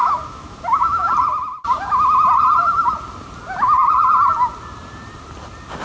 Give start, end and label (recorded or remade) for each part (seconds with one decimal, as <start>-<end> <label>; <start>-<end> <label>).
0.0-1.1 remade; 1.1-5.8 recorded